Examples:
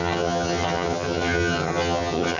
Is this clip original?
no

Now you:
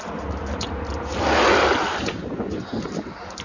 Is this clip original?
yes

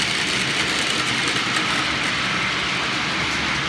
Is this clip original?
yes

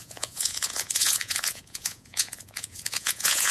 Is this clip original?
no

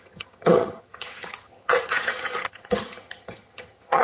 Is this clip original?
no